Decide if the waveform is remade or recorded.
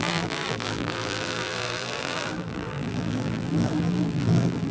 remade